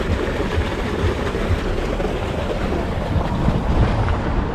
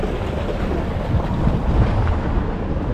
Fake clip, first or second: first